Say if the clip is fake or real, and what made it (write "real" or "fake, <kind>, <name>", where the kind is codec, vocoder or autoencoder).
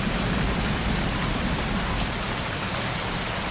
real